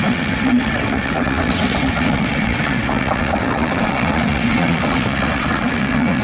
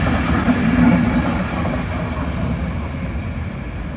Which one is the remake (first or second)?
first